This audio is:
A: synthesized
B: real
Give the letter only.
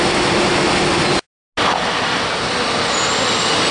B